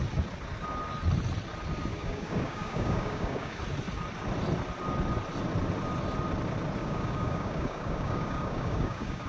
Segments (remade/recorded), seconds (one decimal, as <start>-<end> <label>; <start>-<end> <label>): 0.0-1.9 recorded; 1.9-3.6 remade; 3.6-6.8 recorded; 6.8-9.3 remade